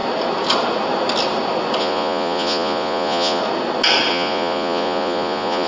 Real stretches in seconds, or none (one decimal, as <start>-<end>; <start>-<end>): 0.0-1.8; 3.4-4.1

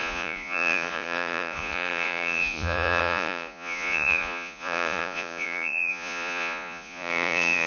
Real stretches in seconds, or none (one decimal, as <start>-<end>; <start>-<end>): none

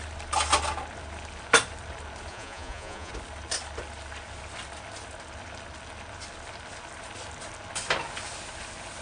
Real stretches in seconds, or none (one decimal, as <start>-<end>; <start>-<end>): 0.0-2.3; 3.1-9.0

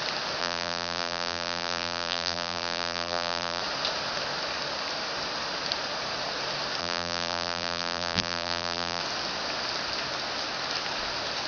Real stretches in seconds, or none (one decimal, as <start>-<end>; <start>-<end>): 0.0-0.4; 3.6-6.8; 9.0-11.5

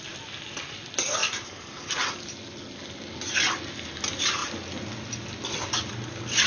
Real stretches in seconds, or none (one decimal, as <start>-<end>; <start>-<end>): 0.0-1.2; 1.8-6.5

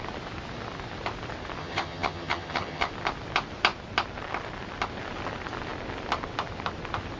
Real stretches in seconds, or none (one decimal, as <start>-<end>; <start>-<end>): 0.0-1.6; 2.9-7.2

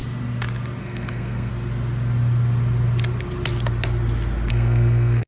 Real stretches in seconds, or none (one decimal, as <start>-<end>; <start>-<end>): 0.0-0.8; 1.5-4.5